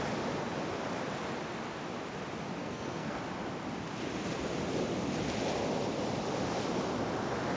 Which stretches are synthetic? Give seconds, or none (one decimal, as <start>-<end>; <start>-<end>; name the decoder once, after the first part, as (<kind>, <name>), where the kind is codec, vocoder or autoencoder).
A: 2.6-3.2 (codec, SNAC)